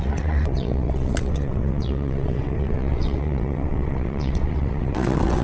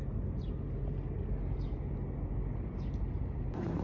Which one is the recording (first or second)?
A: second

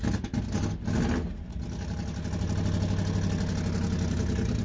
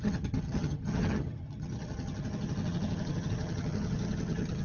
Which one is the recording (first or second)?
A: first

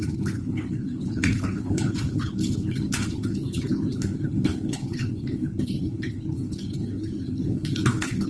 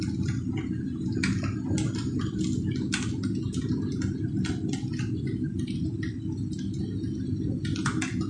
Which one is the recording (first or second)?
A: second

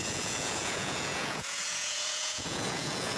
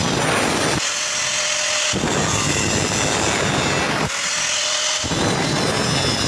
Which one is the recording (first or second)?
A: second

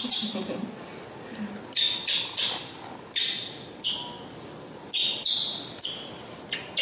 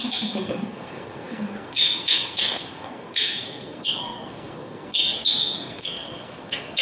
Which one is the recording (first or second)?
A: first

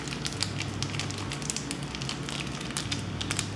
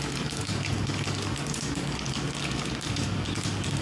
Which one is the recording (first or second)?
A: first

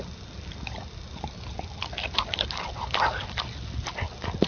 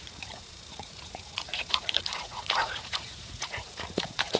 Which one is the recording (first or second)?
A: first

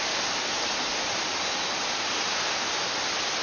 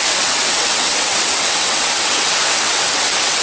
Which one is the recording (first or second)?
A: first